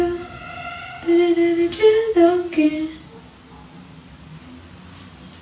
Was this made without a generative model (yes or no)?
yes